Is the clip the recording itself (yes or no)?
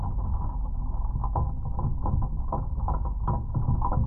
no